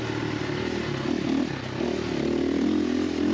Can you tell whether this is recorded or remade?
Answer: recorded